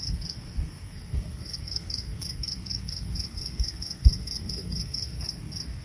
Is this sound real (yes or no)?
no